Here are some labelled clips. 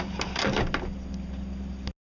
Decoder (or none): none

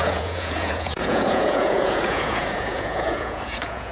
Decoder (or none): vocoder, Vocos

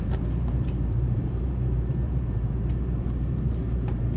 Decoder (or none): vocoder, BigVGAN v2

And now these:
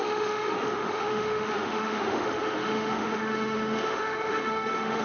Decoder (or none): autoencoder, DAC-VAE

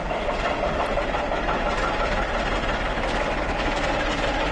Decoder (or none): none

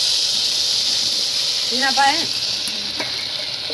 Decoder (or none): none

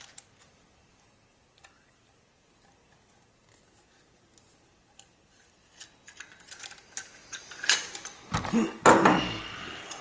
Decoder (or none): none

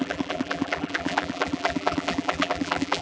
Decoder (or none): vocoder, BigVGAN v2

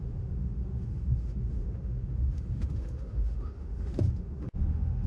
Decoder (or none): autoencoder, DAC-VAE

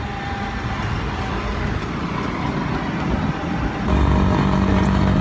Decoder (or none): none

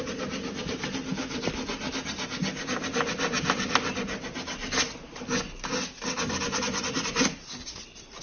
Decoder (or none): none